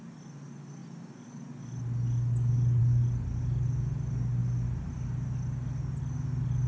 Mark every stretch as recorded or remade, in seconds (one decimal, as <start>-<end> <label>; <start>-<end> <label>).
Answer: 0.0-6.7 recorded